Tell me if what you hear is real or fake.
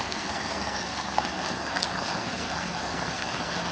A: fake